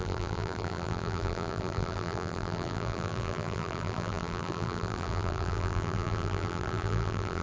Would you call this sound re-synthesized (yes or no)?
yes